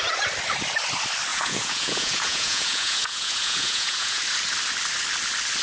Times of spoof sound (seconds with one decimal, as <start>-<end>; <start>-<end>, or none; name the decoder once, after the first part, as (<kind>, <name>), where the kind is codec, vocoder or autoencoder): 1.3-4.2 (vocoder, Vocos)